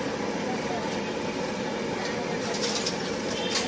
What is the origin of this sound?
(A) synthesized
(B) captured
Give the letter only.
B